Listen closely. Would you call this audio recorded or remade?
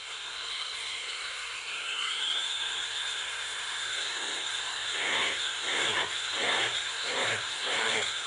remade